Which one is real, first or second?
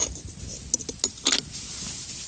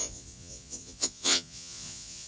first